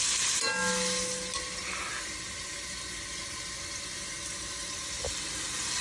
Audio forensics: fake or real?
real